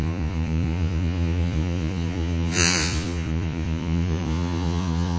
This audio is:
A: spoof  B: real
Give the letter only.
A